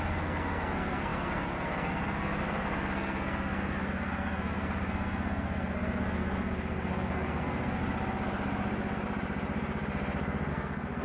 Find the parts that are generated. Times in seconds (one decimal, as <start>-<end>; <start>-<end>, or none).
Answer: 0.0-7.8; 10.5-11.0